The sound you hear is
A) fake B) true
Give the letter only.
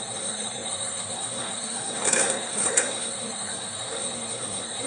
A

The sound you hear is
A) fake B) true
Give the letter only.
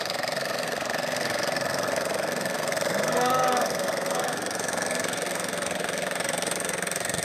A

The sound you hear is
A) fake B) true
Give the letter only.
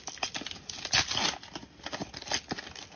B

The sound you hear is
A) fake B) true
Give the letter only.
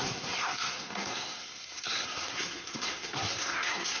A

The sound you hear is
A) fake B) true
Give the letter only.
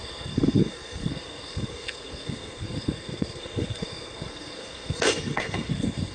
A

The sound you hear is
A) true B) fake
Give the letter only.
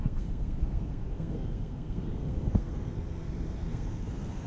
B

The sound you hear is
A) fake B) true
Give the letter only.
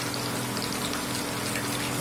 B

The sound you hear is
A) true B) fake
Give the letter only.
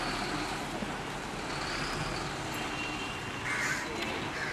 A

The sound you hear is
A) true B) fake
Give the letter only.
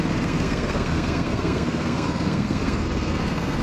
B